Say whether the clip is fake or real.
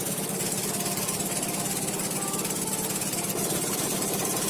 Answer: real